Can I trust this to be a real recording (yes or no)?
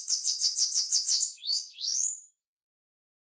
no